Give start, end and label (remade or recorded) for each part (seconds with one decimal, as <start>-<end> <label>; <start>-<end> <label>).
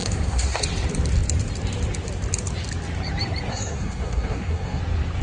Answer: 0.0-0.6 remade; 0.6-3.5 recorded; 3.5-4.8 remade; 4.8-5.2 recorded